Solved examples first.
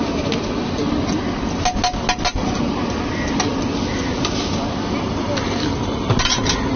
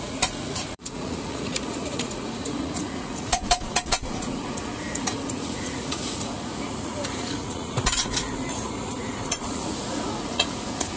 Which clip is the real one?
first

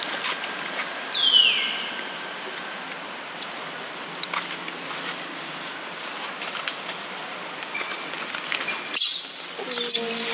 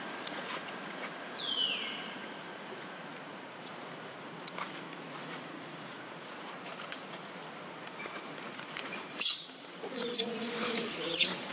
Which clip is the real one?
first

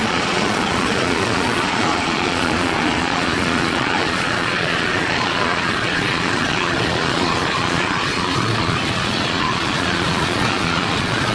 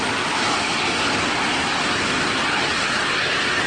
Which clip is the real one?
second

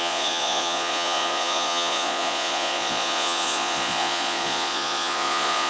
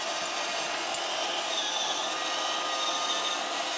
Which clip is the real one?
second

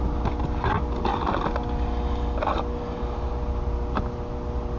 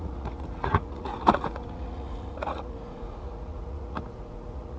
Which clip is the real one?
first